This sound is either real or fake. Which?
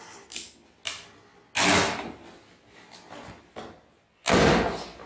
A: real